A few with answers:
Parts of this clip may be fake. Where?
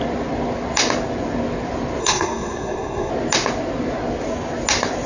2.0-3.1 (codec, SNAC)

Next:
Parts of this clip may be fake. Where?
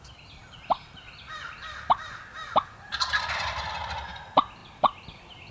0.0-4.6 (vocoder, BigVGAN v2)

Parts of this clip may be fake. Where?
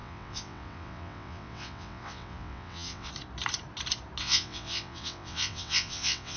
0.0-3.1 (vocoder, WaveNeXt); 4.2-6.4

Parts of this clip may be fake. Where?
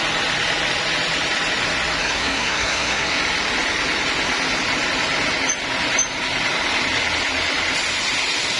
2.0-3.2 (codec, SNAC)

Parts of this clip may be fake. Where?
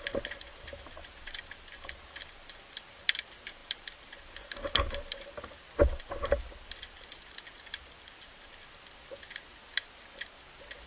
none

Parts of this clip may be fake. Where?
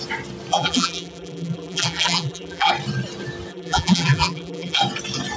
0.5-2.7 (vocoder, BigVGAN v2); 3.5-4.8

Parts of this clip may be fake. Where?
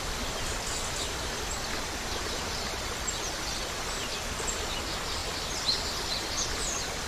none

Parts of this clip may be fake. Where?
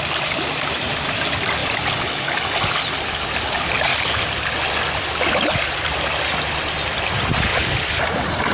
none